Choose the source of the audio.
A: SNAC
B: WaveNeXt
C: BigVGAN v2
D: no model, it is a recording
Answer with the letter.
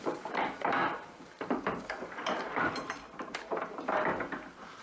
C